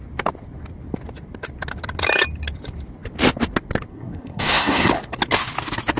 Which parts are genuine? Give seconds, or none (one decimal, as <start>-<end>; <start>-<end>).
0.0-3.9; 4.9-6.0